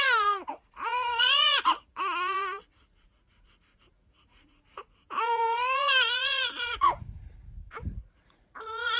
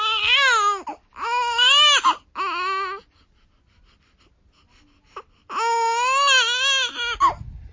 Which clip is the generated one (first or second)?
first